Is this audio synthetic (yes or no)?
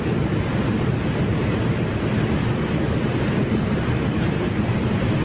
no